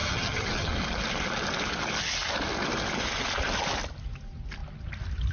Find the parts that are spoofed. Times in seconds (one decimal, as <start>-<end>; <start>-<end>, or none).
0.0-0.7